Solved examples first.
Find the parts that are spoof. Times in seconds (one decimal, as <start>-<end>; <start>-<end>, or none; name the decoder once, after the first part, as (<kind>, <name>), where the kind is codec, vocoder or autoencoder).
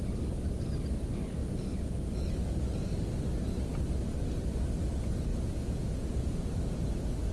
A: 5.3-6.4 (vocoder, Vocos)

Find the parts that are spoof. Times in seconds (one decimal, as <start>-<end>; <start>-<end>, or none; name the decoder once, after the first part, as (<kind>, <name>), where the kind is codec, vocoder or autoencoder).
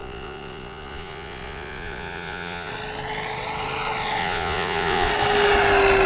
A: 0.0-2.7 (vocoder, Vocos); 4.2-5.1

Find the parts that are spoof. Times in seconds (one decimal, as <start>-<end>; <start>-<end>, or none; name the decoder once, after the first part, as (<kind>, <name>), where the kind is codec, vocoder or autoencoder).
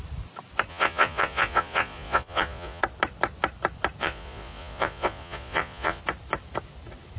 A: 0.7-2.8 (vocoder, Vocos); 4.0-6.0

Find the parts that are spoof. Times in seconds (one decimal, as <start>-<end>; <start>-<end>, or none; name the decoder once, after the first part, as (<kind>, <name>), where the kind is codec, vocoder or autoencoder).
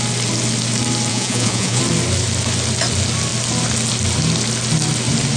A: 1.1-1.8 (vocoder, Vocos)